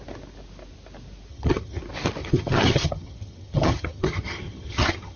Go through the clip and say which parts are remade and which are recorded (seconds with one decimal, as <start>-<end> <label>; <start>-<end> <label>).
0.0-1.3 recorded; 1.3-1.8 remade; 1.8-2.2 recorded; 2.2-5.2 remade